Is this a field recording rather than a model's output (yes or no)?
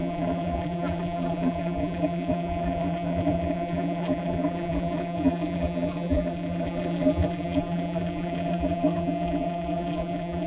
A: no